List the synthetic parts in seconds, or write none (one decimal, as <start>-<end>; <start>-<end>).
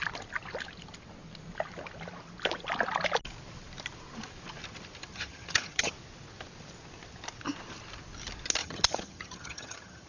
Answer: 5.1-5.9; 8.6-10.1